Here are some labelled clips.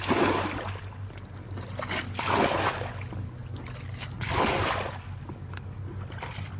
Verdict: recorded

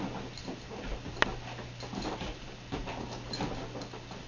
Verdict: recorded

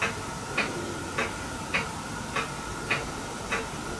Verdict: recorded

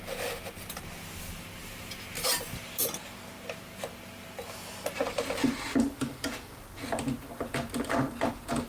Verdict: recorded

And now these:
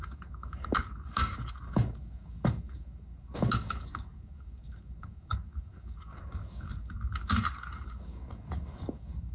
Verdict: remade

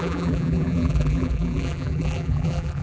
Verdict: remade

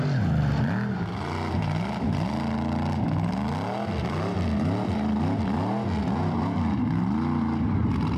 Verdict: recorded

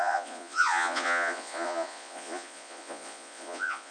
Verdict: remade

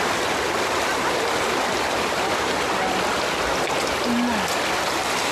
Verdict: recorded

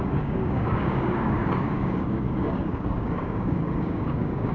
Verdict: remade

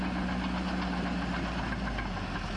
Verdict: recorded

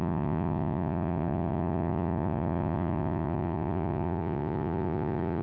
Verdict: remade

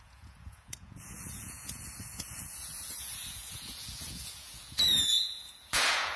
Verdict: remade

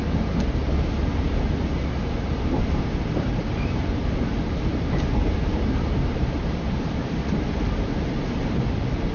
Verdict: remade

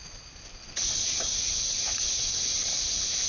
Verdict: recorded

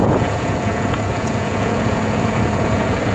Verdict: remade